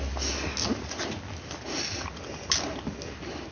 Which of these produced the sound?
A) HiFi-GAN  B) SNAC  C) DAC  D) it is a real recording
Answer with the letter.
D